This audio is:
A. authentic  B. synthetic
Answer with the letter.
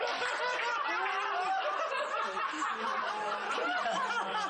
A